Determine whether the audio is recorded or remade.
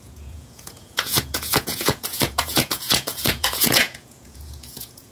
remade